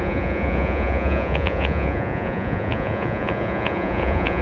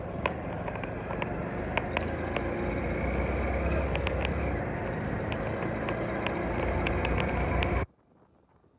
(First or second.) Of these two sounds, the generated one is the first